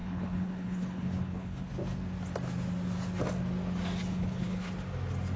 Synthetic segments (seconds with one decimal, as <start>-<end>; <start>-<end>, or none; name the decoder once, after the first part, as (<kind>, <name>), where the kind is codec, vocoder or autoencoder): 0.0-1.7 (codec, HILCodec); 4.1-4.7